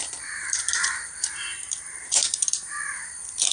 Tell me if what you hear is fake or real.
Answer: fake